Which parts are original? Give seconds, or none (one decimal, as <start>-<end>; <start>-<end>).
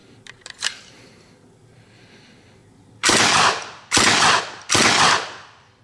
1.3-5.8